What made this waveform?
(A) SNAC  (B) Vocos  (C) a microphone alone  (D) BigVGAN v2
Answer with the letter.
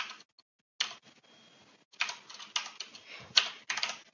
C